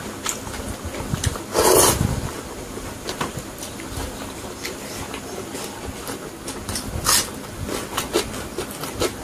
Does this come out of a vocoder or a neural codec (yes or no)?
no